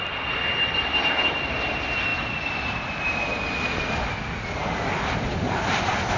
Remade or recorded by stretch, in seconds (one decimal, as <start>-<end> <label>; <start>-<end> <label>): 0.0-6.2 recorded